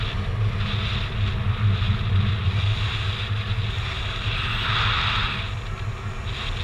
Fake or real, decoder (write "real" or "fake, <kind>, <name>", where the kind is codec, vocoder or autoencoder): real